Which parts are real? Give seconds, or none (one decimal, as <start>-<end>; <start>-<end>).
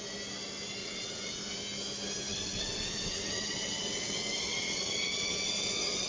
0.0-0.8; 1.4-2.3